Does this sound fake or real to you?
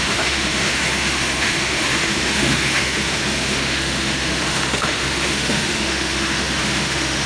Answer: fake